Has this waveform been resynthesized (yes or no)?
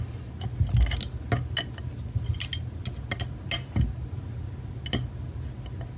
no